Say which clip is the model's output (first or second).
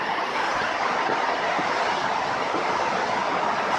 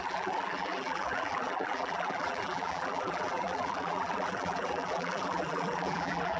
second